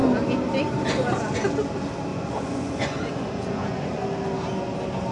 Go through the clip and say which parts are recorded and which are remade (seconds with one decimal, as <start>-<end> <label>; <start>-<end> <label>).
0.0-2.1 recorded; 2.1-4.0 remade; 4.0-5.1 recorded